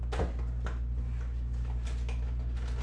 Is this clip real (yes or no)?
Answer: yes